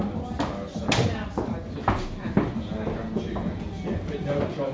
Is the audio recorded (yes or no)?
yes